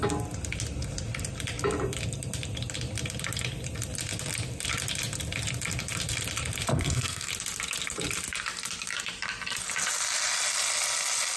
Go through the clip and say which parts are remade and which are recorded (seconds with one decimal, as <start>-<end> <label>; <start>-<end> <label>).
0.0-6.7 recorded; 6.7-7.3 remade; 7.3-11.4 recorded